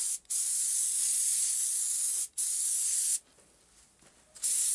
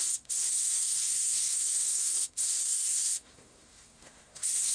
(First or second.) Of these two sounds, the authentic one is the first